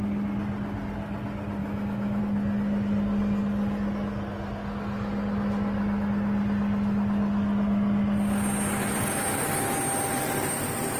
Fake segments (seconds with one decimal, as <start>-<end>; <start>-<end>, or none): 1.6-2.2